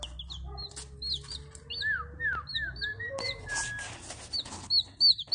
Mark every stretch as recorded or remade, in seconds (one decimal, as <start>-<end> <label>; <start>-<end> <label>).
0.0-5.3 recorded